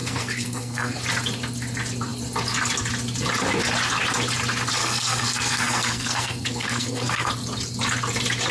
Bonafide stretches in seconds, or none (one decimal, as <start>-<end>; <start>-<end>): 1.0-4.8; 7.3-8.5